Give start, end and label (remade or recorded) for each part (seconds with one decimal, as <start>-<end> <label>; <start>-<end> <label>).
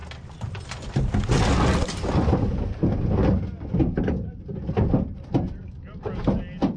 0.0-1.1 remade; 1.1-6.8 recorded